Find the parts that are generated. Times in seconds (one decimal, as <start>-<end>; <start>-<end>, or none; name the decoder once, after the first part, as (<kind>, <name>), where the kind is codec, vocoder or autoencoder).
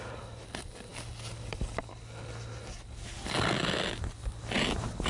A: none